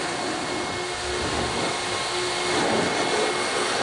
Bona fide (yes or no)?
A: yes